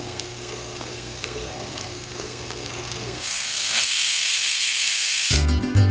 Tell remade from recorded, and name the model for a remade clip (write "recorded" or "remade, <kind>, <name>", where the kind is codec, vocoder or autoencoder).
remade, codec, SNAC